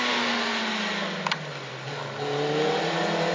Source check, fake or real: real